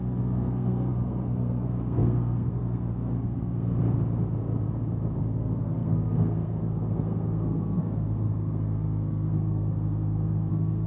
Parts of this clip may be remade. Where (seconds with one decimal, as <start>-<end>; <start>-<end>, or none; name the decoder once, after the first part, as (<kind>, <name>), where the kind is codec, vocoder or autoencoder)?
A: 0.0-3.7 (codec, SNAC); 5.2-10.9